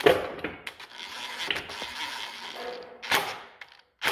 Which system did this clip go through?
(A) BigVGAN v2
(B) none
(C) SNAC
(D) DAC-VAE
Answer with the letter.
B